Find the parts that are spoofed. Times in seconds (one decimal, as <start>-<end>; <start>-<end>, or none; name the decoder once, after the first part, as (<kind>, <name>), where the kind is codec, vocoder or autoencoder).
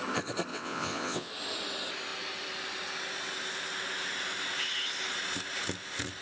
0.5-1.3 (vocoder, WaveNeXt)